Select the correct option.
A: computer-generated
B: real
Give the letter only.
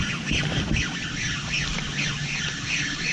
B